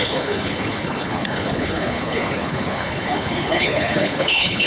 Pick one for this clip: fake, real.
fake